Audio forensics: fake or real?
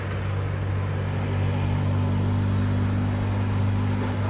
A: real